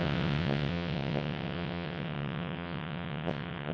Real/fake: fake